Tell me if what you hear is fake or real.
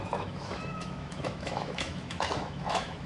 fake